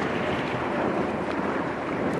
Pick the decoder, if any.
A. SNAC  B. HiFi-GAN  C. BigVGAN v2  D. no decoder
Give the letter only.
C